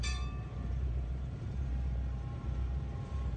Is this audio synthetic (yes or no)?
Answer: yes